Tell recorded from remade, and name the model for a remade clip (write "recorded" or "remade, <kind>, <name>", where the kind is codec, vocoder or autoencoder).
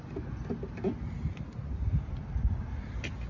recorded